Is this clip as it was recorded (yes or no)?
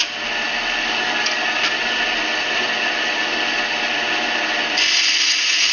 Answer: yes